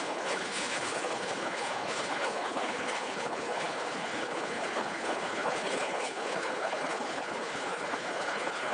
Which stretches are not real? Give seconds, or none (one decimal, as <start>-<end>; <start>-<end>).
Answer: 0.0-8.7